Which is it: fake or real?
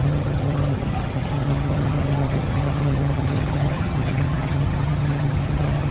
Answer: fake